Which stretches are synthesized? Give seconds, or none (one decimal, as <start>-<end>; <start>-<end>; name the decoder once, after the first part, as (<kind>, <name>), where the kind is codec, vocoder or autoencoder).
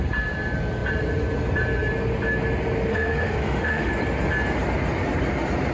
2.9-3.9 (autoencoder, DAC-VAE)